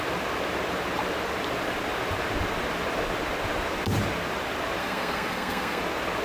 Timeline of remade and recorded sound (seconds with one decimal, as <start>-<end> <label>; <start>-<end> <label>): 0.0-4.8 recorded; 4.8-5.8 remade; 5.8-6.2 recorded